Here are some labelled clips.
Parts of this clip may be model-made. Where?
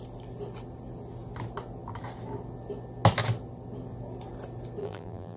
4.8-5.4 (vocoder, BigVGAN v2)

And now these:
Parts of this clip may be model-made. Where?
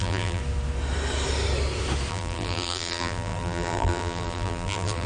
0.0-0.4 (vocoder, BigVGAN v2); 2.1-5.1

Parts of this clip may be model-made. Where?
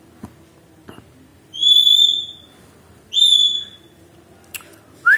1.3-3.0 (vocoder, BigVGAN v2)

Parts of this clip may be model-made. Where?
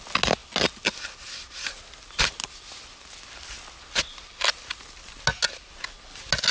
none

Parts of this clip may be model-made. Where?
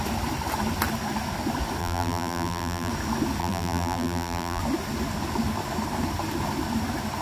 1.8-2.9 (vocoder, BigVGAN v2); 3.4-4.6